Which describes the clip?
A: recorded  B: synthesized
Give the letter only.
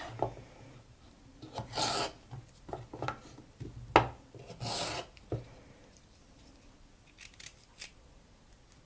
A